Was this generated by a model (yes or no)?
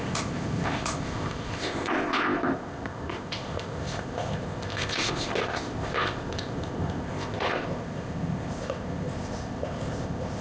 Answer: yes